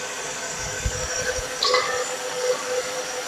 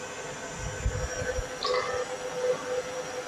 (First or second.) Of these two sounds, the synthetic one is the first